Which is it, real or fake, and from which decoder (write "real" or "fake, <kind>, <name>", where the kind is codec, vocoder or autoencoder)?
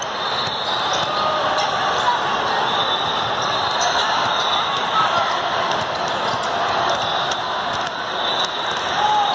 real